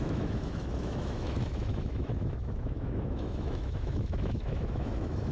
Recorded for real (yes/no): no